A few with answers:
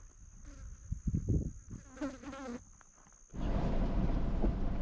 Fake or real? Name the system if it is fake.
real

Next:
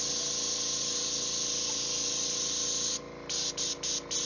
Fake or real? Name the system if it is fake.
real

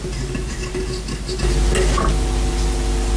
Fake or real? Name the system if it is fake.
fake, vocoder, BigVGAN v2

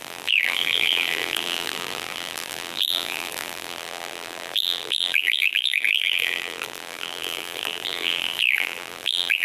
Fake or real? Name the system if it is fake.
fake, vocoder, BigVGAN v2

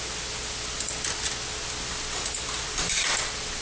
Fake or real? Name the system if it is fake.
real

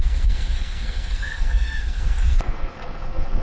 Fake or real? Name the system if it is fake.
fake, codec, SNAC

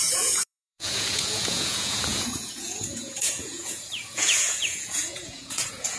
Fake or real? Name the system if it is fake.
fake, vocoder, Vocos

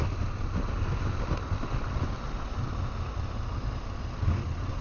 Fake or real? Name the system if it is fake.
real